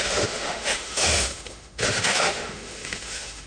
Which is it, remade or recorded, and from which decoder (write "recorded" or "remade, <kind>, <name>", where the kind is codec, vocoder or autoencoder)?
remade, autoencoder, DAC-VAE